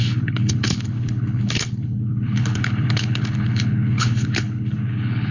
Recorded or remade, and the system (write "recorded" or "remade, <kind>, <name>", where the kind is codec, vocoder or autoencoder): remade, codec, HILCodec